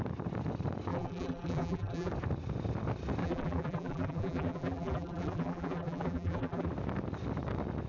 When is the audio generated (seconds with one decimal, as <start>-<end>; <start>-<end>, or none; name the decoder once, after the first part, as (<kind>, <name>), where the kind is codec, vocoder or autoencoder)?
0.9-2.1 (vocoder, BigVGAN v2); 3.2-6.7